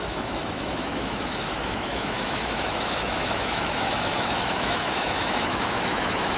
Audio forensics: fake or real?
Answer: fake